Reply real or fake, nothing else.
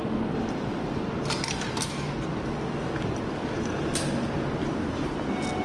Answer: real